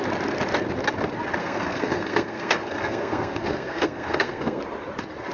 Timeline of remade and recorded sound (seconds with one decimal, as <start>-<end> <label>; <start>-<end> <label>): 0.0-1.4 recorded; 1.4-4.6 remade; 4.6-5.3 recorded